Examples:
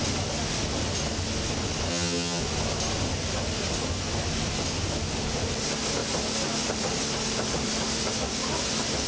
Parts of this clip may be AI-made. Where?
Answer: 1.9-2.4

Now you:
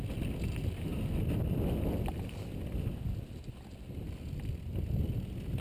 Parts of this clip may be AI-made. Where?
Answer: none